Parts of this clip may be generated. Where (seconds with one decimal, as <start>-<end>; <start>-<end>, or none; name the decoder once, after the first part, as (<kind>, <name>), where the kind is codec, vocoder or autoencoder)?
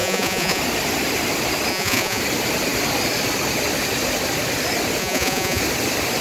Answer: 0.0-0.6 (vocoder, Vocos); 1.7-2.2; 5.0-5.6